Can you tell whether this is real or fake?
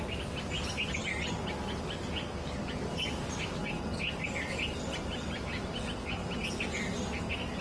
real